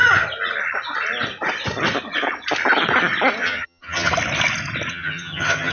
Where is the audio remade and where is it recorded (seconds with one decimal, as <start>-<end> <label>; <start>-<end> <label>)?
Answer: 0.0-3.4 recorded; 3.4-4.1 remade; 4.1-4.9 recorded; 4.9-5.7 remade